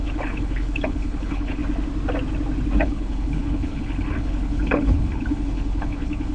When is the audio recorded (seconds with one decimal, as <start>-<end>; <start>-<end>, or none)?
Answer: 1.6-2.8